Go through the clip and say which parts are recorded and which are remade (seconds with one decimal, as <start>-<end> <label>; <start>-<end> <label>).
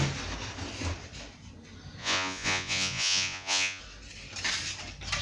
0.0-2.0 recorded; 2.0-3.8 remade; 3.8-5.2 recorded